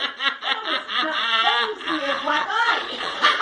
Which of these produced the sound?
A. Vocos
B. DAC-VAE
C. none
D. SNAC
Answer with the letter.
A